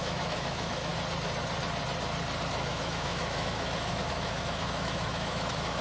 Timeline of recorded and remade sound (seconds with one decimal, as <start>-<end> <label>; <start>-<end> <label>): 0.0-0.9 remade; 0.9-2.5 recorded; 2.5-5.8 remade